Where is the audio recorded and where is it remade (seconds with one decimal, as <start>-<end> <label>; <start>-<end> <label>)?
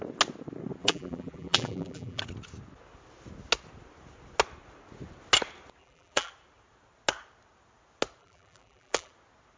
0.0-0.8 recorded; 0.8-2.2 remade; 2.2-5.8 recorded; 5.8-6.3 remade; 6.3-8.2 recorded; 8.2-9.1 remade; 9.1-9.6 recorded